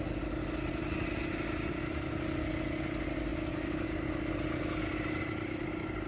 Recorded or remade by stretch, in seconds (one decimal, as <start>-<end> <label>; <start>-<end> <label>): 0.0-6.1 recorded